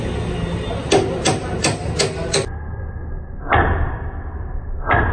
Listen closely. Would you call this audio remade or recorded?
recorded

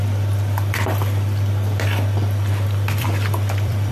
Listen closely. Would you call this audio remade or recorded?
remade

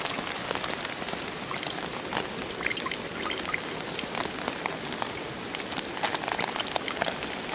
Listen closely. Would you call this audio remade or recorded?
recorded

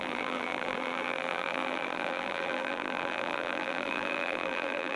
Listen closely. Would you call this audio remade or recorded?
remade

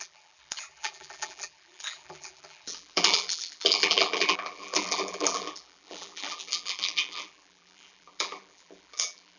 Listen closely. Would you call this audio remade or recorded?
remade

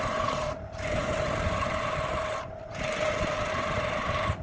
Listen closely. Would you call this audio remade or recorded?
remade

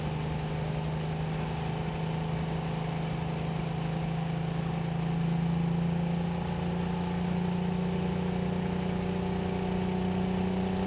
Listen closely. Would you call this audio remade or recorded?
recorded